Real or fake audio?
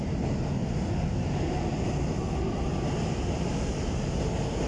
real